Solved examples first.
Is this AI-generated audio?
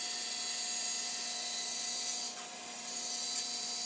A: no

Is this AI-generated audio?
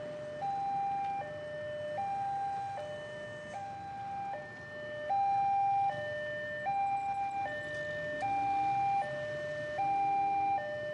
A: no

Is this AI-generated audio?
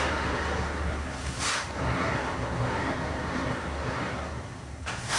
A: yes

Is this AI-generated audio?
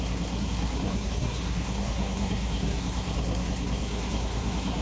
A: yes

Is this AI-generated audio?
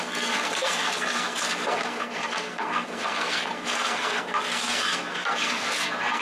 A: yes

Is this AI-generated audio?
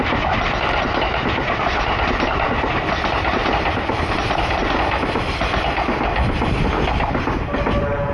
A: no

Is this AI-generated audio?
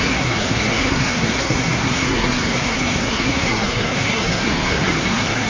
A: yes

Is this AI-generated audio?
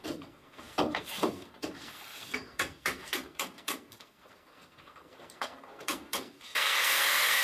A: yes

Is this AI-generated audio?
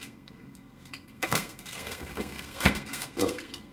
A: yes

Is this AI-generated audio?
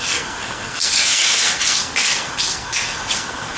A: yes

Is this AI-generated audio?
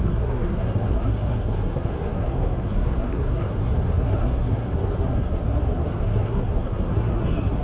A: yes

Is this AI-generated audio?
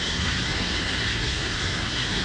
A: yes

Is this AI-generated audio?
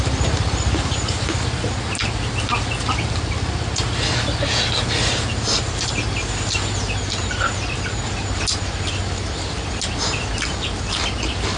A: no